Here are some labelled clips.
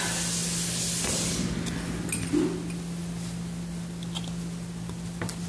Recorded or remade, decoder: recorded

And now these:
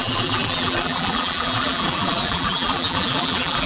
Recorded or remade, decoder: remade, vocoder, BigVGAN v2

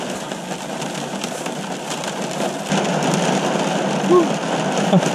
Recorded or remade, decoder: recorded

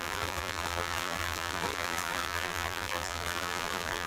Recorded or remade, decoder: remade, vocoder, BigVGAN v2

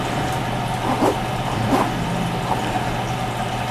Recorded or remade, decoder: recorded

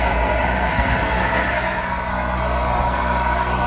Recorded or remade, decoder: remade, codec, SNAC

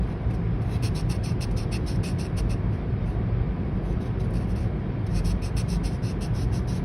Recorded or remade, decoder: remade, vocoder, BigVGAN v2